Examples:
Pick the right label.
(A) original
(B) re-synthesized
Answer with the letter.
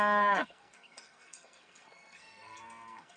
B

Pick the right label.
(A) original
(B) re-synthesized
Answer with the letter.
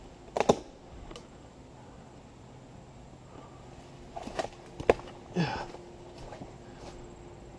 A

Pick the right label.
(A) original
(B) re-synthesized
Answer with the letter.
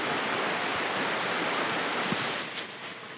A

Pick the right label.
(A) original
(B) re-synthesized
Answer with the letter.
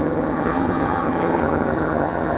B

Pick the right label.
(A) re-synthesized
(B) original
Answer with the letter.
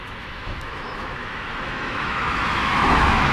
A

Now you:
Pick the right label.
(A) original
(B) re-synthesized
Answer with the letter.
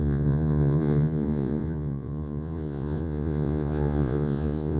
B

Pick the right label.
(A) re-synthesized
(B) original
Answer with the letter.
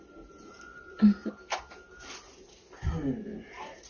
B